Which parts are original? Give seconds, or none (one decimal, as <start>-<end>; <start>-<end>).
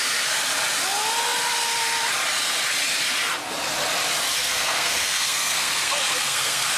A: 0.0-4.4